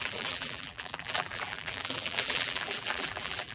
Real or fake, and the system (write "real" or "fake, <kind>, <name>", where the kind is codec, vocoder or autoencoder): fake, vocoder, BigVGAN v2